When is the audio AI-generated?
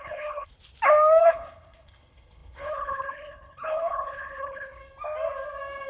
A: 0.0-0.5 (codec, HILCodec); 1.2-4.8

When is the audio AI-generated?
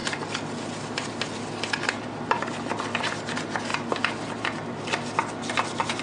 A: none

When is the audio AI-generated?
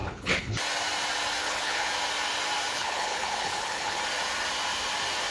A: 0.0-0.6 (codec, HILCodec); 1.4-1.9; 2.7-4.0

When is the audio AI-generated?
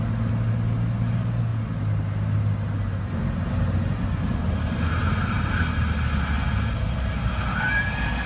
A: none